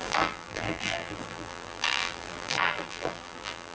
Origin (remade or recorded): remade